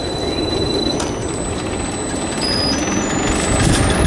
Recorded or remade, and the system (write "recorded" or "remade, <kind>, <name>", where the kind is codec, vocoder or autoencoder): remade, vocoder, BigVGAN v2